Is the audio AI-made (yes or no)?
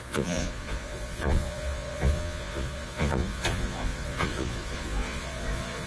yes